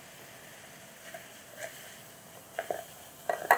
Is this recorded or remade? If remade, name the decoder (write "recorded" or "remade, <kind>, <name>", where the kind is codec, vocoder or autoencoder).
remade, vocoder, BigVGAN v2